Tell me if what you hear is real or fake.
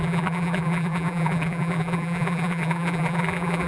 fake